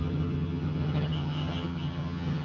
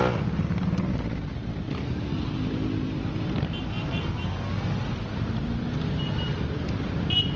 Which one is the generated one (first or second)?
first